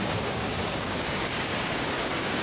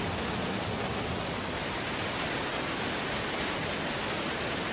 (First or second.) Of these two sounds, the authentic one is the second